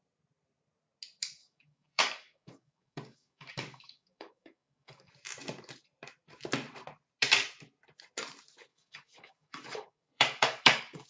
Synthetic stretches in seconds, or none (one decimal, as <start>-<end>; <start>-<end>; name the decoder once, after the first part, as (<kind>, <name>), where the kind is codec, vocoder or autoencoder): 1.4-5.1 (codec, DAC); 8.7-11.1